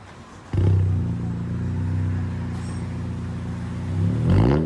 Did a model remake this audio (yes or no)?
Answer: no